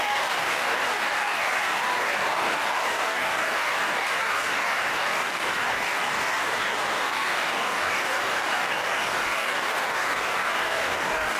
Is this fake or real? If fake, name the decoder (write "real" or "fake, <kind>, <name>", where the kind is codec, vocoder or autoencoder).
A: fake, codec, DAC